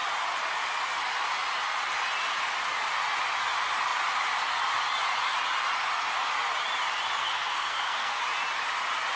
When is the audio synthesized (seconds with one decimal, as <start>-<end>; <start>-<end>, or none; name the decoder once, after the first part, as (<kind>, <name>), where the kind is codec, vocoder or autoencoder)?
7.2-8.2 (codec, SNAC)